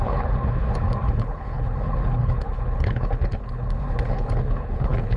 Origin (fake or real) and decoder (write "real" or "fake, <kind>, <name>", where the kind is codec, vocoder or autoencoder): fake, codec, HILCodec